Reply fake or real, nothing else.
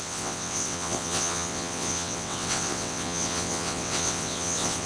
fake